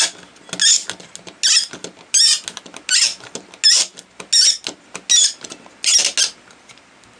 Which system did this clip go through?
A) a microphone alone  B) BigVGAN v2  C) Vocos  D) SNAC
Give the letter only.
A